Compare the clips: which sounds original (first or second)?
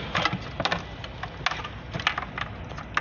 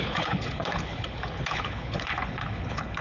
first